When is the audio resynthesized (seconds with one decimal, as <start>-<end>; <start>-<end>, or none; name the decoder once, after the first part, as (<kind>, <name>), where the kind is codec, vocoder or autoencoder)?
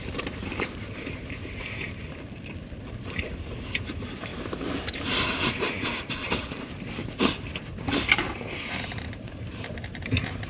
0.0-2.0 (vocoder, BigVGAN v2); 3.0-4.3; 4.9-7.0; 8.7-10.5